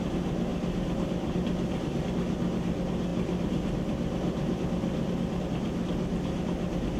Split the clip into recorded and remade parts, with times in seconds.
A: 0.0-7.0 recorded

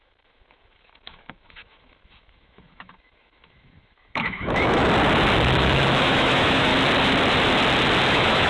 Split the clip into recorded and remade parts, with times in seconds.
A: 0.0-4.8 remade; 4.8-5.6 recorded; 5.6-6.7 remade; 6.7-8.1 recorded; 8.1-8.5 remade

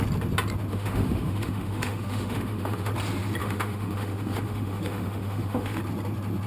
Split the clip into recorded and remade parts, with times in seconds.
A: 0.0-0.7 recorded; 0.7-2.9 remade; 2.9-3.4 recorded; 3.4-5.8 remade; 5.8-6.5 recorded

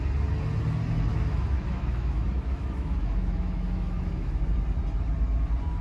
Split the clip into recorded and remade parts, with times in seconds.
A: 0.0-1.1 recorded; 1.1-4.4 remade; 4.4-5.8 recorded

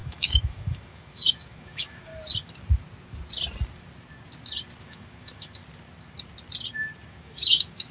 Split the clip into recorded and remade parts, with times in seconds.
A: 0.0-2.1 remade; 2.1-4.8 recorded; 4.8-5.6 remade; 5.6-7.1 recorded; 7.1-7.9 remade

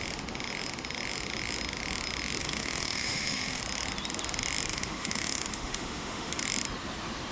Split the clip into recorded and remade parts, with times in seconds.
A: 0.0-2.4 recorded; 2.4-3.6 remade; 3.6-4.7 recorded; 4.7-6.4 remade; 6.4-7.3 recorded